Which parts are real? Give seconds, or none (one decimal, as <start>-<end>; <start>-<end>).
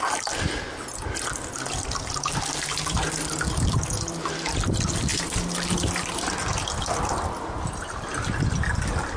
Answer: 0.0-9.2